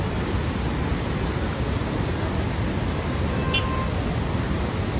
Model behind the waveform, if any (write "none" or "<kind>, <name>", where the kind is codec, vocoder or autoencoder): none